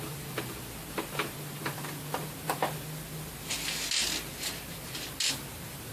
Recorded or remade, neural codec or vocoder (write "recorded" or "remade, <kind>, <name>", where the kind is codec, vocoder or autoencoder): recorded